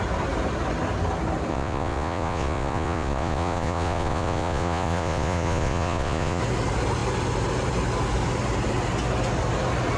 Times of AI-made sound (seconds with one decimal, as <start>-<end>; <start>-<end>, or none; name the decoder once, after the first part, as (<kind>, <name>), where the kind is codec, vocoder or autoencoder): 1.5-6.4 (vocoder, Vocos)